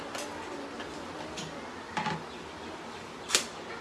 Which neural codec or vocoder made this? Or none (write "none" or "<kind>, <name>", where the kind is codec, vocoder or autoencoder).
none